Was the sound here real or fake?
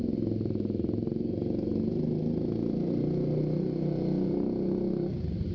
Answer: real